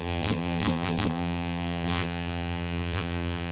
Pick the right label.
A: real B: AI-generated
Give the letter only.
B